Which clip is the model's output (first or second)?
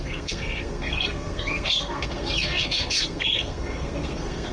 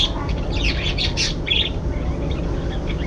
first